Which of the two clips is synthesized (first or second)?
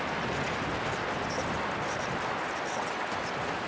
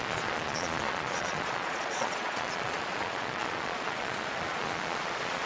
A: second